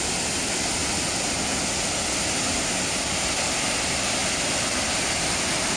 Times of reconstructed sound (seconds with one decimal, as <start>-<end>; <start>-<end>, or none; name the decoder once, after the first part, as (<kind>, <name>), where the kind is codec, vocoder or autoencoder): none